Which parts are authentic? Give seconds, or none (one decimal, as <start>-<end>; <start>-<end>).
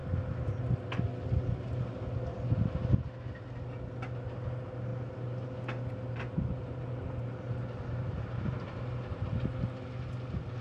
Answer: 0.0-4.9; 8.8-10.6